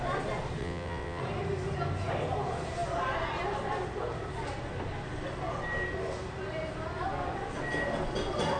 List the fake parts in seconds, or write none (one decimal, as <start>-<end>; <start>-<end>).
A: 0.6-1.2